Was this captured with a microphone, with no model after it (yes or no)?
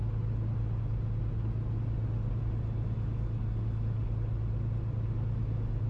yes